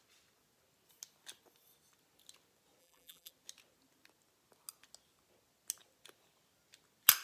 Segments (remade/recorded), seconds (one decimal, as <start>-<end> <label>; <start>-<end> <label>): 0.0-2.8 recorded; 2.8-3.3 remade; 3.3-7.2 recorded